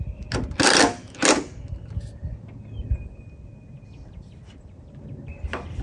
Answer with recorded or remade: recorded